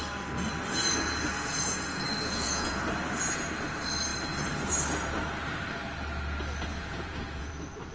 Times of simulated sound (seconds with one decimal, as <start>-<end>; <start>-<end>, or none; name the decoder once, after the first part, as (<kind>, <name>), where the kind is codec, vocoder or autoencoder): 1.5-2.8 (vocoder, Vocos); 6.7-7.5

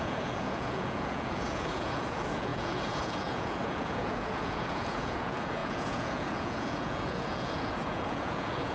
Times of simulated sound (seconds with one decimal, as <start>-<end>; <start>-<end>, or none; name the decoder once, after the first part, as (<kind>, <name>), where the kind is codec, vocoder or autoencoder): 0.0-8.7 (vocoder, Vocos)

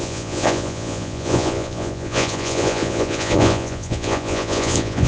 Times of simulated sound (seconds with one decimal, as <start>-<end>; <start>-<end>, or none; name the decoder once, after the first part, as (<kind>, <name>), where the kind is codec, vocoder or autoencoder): 0.0-5.1 (vocoder, Vocos)